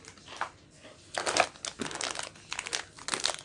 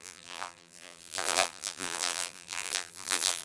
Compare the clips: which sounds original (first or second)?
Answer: first